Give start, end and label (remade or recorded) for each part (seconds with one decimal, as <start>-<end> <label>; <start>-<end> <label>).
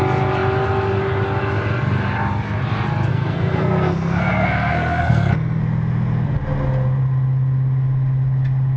0.0-3.1 recorded; 3.1-5.6 remade; 5.6-8.8 recorded